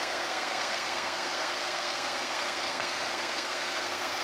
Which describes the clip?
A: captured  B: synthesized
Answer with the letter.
B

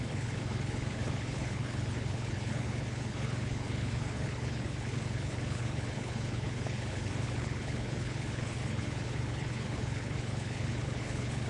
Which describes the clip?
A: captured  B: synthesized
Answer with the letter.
B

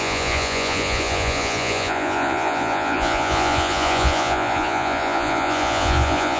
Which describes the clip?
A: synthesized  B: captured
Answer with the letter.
A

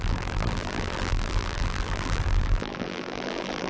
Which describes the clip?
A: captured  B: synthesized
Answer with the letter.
B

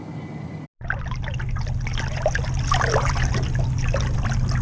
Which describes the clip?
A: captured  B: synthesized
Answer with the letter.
A